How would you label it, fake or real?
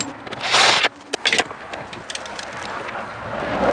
real